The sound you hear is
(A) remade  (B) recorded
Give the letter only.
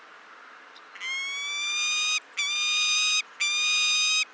B